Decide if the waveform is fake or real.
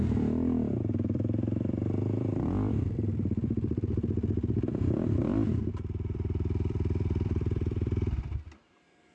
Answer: fake